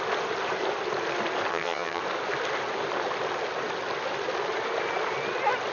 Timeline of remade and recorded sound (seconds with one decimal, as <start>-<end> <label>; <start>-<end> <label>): 0.0-1.5 recorded; 1.5-2.0 remade; 2.0-5.7 recorded